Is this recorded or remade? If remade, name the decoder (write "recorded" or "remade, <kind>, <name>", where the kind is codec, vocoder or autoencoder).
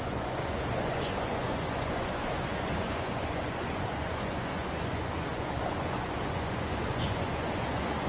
remade, vocoder, Vocos